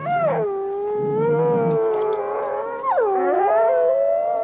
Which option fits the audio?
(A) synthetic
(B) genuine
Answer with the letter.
B